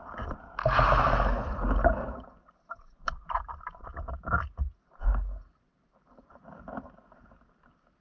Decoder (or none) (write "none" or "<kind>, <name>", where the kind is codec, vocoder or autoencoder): none